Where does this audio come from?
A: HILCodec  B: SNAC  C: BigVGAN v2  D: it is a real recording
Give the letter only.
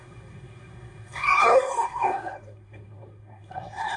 B